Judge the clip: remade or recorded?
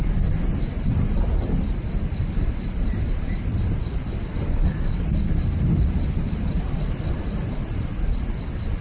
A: recorded